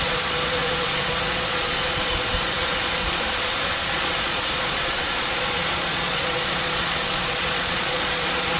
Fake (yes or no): yes